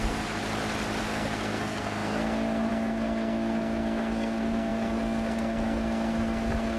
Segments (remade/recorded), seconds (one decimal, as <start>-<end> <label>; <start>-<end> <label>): 0.0-0.4 remade; 0.4-1.0 recorded; 1.0-6.8 remade